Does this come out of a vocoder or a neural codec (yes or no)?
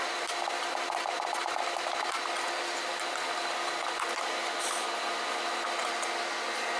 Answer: no